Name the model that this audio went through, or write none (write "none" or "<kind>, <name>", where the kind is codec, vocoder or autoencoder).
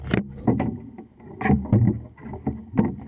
none